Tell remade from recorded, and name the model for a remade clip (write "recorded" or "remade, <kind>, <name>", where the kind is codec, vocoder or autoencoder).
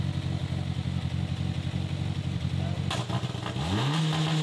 recorded